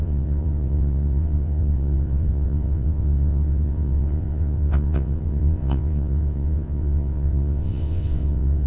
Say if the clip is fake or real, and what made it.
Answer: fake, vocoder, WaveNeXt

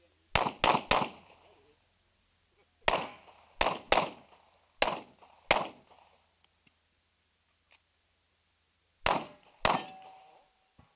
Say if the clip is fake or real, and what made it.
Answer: real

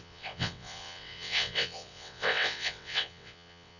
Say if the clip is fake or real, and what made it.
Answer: fake, vocoder, WaveNeXt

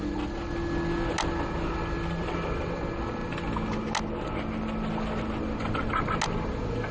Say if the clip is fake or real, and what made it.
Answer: real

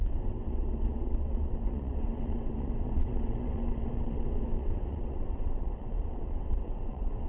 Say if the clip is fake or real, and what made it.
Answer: fake, vocoder, WaveNeXt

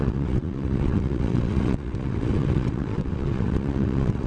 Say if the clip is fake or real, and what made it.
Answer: fake, vocoder, WaveNeXt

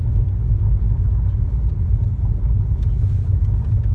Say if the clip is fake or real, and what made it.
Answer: real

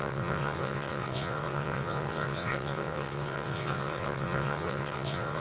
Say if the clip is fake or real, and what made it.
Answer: fake, vocoder, WaveNeXt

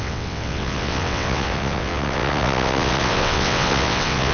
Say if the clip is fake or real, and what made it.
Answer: fake, vocoder, WaveNeXt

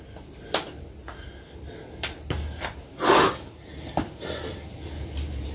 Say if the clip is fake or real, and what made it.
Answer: real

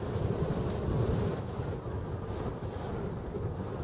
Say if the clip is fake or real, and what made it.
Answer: real